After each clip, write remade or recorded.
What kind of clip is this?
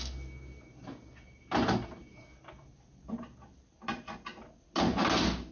recorded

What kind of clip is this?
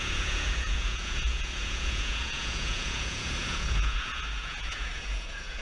remade